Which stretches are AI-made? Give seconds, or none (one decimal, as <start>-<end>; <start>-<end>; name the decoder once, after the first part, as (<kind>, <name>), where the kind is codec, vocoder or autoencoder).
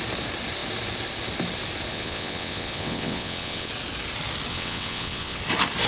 1.9-3.7 (vocoder, WaveNeXt); 4.5-5.4